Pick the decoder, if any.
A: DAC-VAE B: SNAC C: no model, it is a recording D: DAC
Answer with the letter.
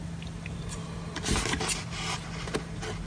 C